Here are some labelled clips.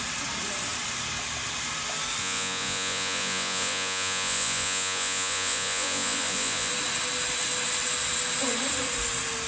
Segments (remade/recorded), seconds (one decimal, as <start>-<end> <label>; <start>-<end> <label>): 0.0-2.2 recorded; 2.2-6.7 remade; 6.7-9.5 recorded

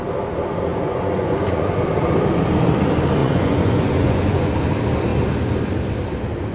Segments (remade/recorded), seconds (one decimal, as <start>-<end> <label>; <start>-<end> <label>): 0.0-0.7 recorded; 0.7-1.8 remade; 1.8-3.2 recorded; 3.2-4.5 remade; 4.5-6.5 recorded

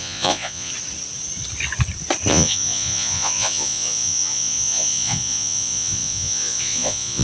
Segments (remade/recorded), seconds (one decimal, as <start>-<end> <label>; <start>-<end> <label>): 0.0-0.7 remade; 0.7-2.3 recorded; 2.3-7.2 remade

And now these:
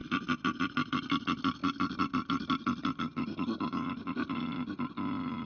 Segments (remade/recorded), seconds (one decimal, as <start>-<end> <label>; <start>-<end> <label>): 0.0-5.5 recorded